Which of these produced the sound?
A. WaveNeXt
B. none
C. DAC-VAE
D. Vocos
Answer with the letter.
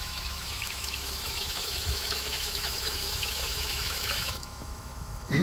C